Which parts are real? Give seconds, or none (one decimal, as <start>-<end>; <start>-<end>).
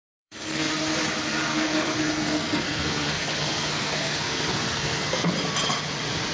0.7-1.5; 5.3-6.3